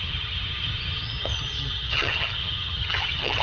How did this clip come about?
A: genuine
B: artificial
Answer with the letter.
B